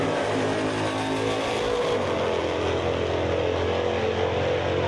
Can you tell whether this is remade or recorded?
recorded